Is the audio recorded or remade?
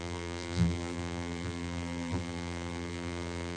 remade